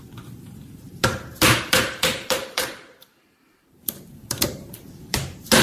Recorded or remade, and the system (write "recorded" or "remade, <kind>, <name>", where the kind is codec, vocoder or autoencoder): remade, vocoder, BigVGAN v2